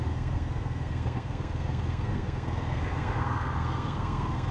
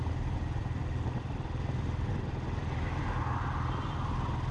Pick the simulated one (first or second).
first